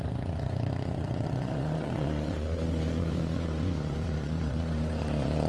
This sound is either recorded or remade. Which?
remade